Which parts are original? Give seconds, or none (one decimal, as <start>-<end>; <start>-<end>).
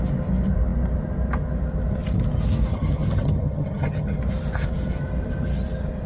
0.0-2.7; 4.2-6.1